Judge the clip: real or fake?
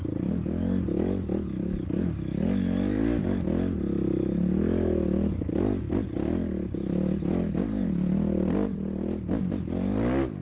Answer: real